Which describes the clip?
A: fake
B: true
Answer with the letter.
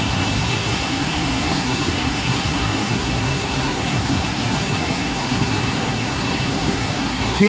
A